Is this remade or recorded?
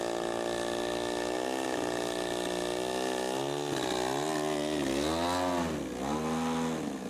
recorded